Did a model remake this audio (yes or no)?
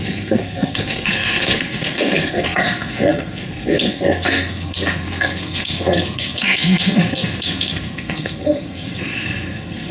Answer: yes